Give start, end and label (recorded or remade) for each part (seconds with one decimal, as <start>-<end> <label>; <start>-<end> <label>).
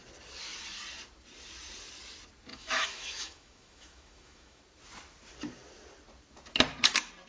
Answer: 0.0-2.5 recorded; 2.5-4.6 remade; 4.6-7.3 recorded